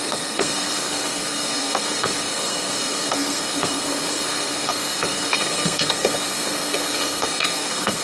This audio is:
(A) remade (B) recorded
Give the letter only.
A